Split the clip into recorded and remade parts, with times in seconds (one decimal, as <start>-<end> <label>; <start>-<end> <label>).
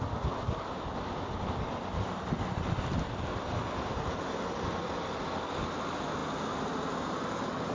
0.0-7.7 recorded